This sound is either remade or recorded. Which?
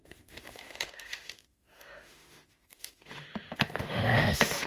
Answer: remade